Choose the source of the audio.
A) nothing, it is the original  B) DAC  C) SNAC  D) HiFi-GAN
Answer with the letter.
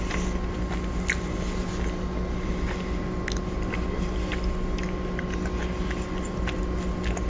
A